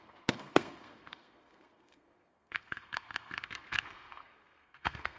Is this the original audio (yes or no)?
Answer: no